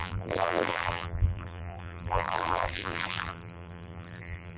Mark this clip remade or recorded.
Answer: remade